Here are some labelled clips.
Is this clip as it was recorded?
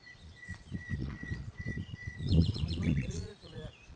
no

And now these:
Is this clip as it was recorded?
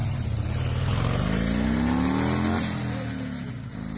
yes